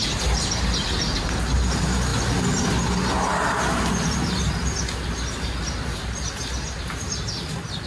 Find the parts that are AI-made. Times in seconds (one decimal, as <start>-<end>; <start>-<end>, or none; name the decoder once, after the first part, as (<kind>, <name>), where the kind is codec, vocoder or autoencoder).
none